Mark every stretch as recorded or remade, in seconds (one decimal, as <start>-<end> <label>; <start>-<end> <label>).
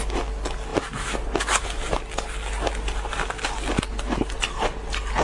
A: 0.0-5.2 recorded